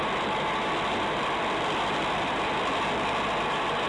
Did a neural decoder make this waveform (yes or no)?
no